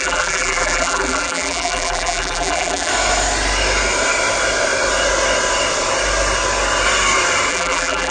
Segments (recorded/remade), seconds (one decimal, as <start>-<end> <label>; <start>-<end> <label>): 0.0-2.9 remade; 2.9-7.5 recorded; 7.5-8.1 remade

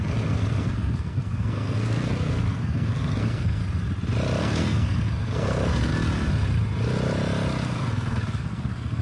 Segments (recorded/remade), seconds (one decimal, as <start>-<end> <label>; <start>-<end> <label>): 0.0-3.6 remade; 3.6-4.4 recorded; 4.4-5.9 remade; 5.9-7.6 recorded; 7.6-9.0 remade

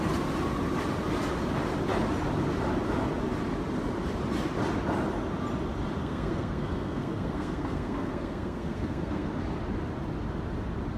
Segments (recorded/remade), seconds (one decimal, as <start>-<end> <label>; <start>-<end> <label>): 0.0-6.0 recorded; 6.0-9.3 remade; 9.3-11.0 recorded

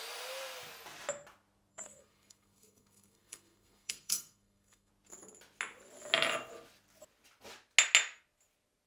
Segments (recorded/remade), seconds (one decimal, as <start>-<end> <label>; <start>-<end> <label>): 0.0-1.7 recorded; 1.7-4.9 remade; 4.9-8.9 recorded

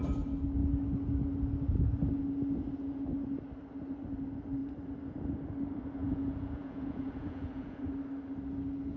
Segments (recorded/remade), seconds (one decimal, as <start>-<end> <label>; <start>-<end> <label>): 0.0-6.0 recorded; 6.0-7.9 remade; 7.9-9.0 recorded

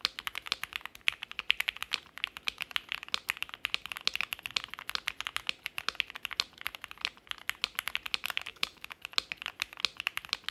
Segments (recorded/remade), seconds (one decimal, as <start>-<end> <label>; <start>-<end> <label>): 0.0-8.5 recorded; 8.5-9.0 remade; 9.0-10.5 recorded

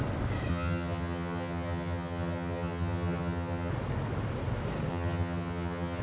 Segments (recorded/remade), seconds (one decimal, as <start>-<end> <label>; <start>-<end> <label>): 0.0-0.5 recorded; 0.5-3.7 remade; 3.7-4.9 recorded; 4.9-6.0 remade

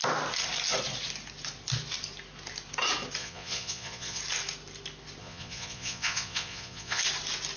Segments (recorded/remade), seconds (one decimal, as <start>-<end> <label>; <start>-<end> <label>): 0.0-3.2 recorded; 3.2-4.2 remade; 4.2-5.2 recorded; 5.2-7.0 remade; 7.0-7.6 recorded